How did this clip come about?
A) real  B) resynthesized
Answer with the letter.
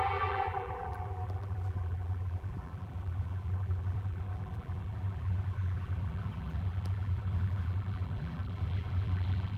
B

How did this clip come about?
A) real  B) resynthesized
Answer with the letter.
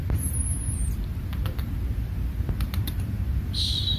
A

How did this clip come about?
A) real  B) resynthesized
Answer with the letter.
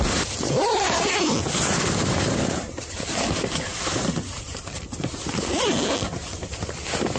A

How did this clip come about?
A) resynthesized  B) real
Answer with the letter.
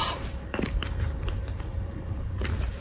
A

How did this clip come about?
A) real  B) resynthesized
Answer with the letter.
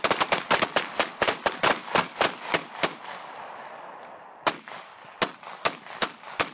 B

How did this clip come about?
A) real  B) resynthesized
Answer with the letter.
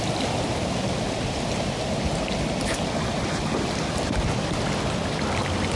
A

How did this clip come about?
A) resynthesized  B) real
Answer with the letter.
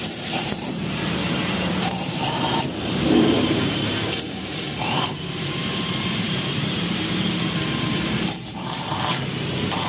A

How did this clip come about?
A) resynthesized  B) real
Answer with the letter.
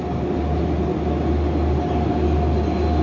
B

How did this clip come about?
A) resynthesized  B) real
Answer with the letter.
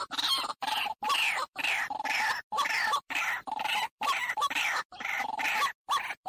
A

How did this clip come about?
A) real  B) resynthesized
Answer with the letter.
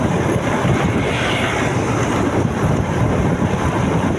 B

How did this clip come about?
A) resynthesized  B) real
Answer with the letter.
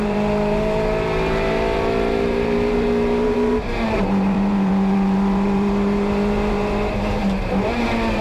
A